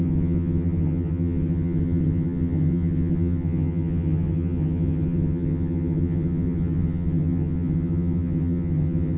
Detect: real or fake fake